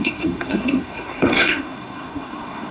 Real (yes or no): no